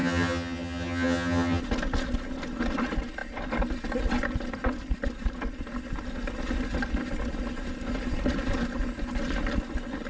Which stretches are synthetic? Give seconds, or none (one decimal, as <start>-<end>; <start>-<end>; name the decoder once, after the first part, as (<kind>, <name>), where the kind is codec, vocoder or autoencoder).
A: 0.0-1.6 (vocoder, HiFi-GAN)